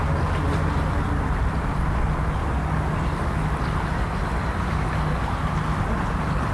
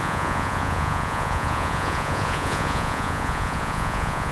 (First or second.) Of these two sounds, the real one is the first